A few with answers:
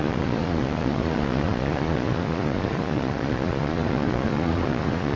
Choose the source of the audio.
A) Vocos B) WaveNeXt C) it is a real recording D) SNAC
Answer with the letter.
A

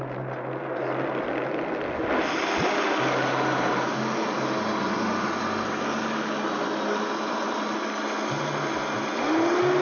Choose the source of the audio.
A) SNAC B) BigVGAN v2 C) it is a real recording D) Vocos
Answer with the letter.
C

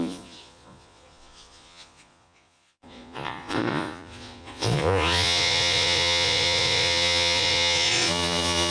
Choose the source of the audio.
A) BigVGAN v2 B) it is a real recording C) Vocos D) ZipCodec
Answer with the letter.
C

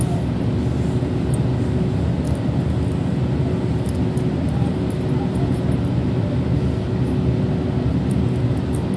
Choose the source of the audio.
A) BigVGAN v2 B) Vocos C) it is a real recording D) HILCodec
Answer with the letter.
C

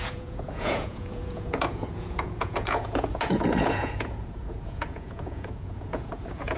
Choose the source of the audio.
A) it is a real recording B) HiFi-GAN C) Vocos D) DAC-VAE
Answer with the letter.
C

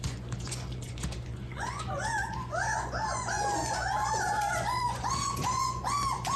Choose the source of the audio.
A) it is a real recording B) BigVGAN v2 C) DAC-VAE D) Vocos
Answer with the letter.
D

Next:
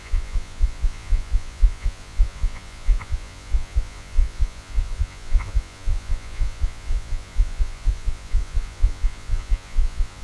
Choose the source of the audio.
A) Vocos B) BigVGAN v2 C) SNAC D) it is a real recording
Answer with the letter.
A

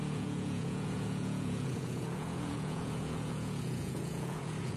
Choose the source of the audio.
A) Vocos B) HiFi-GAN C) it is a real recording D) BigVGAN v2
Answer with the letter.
A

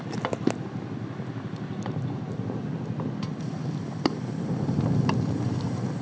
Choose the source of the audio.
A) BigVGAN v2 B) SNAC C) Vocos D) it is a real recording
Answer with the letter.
D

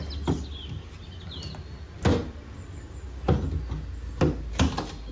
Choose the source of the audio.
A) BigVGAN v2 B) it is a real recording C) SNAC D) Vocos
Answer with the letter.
B